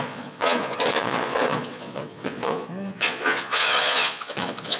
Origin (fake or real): fake